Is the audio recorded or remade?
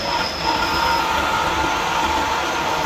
recorded